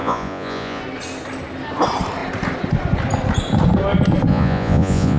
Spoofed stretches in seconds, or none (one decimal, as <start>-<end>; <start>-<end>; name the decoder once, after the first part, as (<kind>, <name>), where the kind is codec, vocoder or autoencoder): 0.0-0.8 (vocoder, Vocos); 4.3-5.2